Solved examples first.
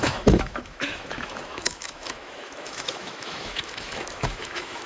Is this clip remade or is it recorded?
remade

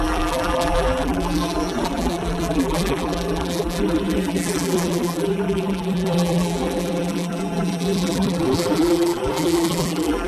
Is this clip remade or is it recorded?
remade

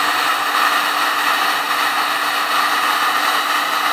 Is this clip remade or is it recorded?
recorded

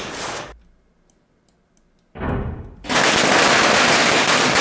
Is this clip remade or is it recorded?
recorded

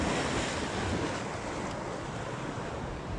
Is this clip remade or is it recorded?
recorded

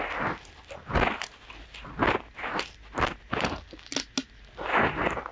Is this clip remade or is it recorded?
recorded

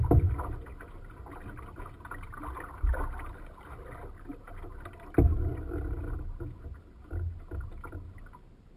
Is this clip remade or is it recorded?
recorded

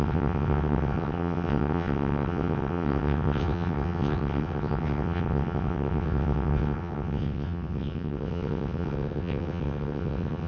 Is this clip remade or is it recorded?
remade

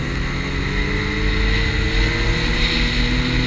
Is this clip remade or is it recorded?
recorded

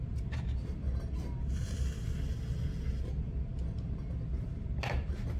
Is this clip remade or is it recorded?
recorded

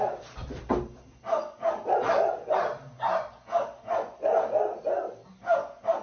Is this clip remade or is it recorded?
remade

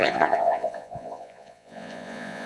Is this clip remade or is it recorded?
remade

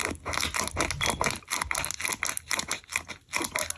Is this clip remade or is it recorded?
recorded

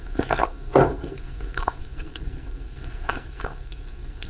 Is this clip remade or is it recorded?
remade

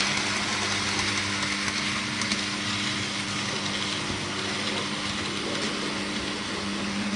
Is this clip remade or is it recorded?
recorded